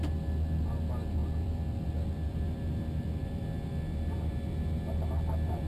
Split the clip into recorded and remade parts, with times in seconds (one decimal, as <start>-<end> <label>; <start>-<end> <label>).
0.0-1.2 recorded; 1.2-3.4 remade; 3.4-5.7 recorded